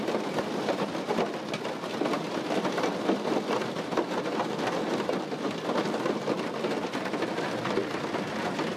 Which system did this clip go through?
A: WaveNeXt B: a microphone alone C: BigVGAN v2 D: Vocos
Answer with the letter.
B